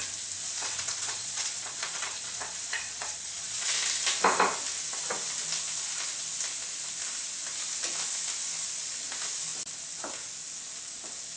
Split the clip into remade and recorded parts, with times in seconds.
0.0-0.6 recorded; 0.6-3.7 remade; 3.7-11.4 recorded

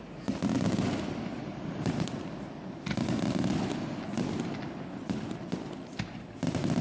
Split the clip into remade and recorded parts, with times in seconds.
0.0-1.5 recorded; 1.5-3.6 remade; 3.6-6.8 recorded

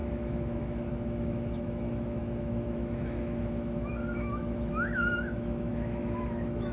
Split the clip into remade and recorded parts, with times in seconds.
0.0-6.7 remade